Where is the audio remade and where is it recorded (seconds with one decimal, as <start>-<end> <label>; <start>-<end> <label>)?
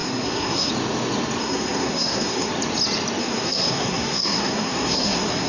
0.0-0.7 remade; 0.7-1.4 recorded; 1.4-2.5 remade; 2.5-3.2 recorded; 3.2-5.5 remade